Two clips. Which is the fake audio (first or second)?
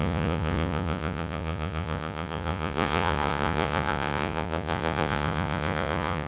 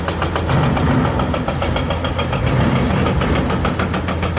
first